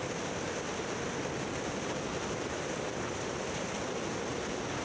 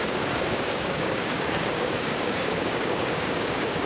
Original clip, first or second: first